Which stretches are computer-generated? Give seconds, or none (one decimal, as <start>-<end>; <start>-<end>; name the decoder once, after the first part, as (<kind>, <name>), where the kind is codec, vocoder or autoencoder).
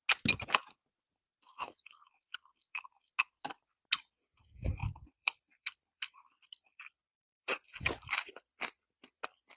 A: 4.8-7.4 (vocoder, BigVGAN v2)